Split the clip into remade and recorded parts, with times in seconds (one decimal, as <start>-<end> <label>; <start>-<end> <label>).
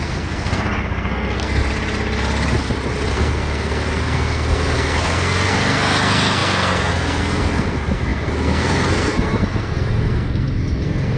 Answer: 0.0-1.6 remade; 1.6-3.1 recorded; 3.1-11.2 remade